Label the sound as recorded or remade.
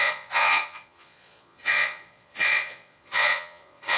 remade